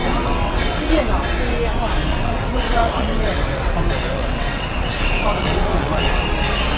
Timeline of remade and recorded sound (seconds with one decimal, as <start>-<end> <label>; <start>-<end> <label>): 0.0-1.0 remade; 1.0-2.1 recorded; 2.1-6.2 remade; 6.2-6.8 recorded